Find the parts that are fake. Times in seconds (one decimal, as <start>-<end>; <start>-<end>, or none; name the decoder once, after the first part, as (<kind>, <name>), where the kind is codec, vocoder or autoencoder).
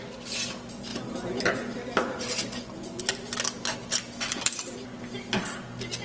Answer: none